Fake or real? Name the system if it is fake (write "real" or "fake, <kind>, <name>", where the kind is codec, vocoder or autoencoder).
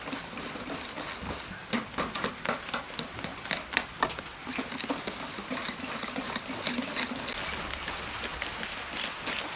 real